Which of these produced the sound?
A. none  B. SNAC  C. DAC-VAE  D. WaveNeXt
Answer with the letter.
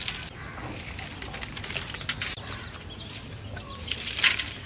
A